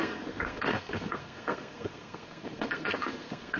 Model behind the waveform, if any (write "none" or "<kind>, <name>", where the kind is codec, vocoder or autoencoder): codec, SNAC